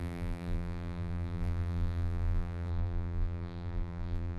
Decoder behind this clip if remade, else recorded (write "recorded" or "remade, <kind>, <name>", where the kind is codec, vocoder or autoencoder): remade, vocoder, BigVGAN v2